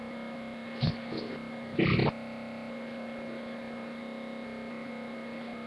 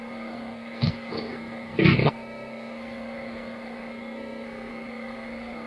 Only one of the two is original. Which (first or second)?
first